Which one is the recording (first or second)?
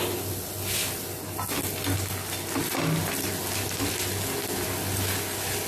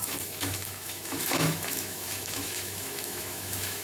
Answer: first